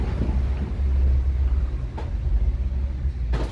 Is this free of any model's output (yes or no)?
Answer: yes